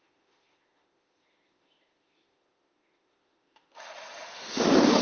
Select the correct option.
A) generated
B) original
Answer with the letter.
A